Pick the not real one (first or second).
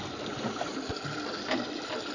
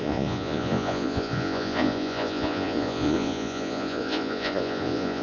second